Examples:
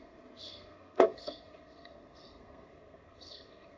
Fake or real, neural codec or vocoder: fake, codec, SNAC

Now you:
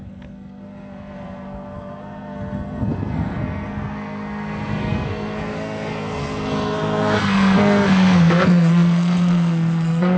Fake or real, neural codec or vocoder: fake, codec, SNAC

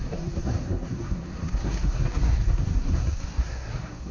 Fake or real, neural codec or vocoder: fake, codec, SNAC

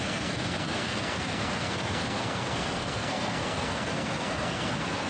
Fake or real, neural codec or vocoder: fake, codec, SNAC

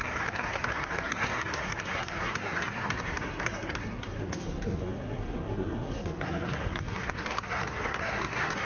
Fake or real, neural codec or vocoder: fake, codec, SNAC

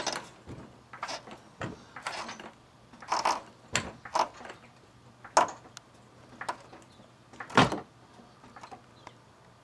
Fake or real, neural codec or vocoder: real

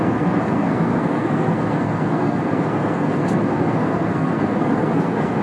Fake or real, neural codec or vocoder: fake, codec, SNAC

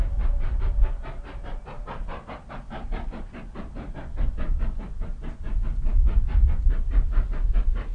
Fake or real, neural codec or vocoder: real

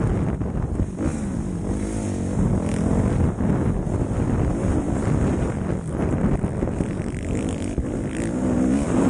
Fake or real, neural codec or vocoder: real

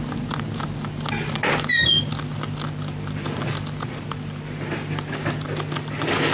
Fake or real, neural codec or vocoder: real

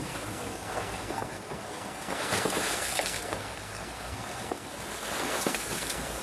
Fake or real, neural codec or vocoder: fake, codec, SNAC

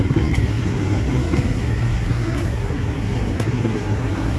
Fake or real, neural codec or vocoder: fake, codec, SNAC